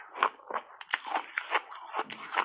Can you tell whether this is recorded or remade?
recorded